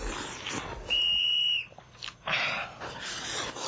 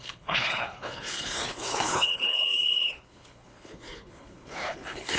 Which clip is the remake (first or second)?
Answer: second